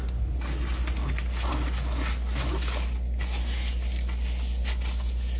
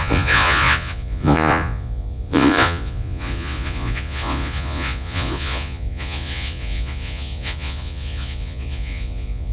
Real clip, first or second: first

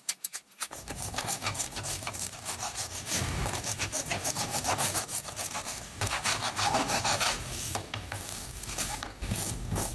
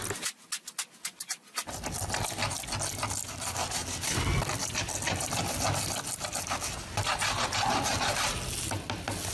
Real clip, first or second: second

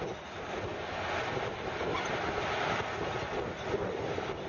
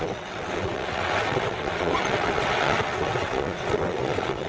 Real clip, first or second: first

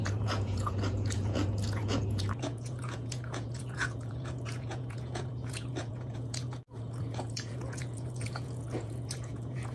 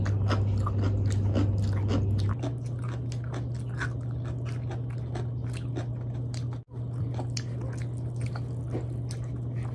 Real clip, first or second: second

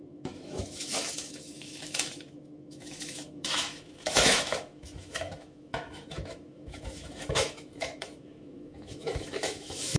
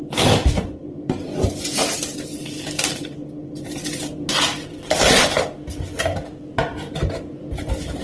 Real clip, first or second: second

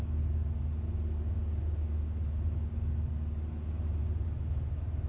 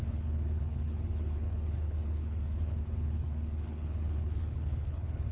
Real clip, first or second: first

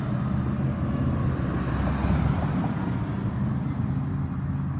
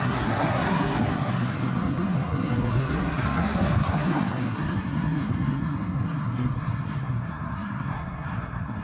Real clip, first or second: first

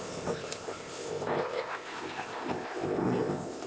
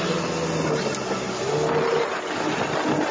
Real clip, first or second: second